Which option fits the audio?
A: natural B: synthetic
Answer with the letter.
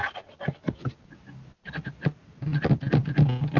A